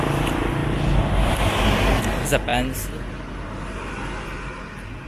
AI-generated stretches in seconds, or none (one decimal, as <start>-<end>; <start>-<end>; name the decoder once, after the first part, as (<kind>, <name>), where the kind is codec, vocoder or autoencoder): none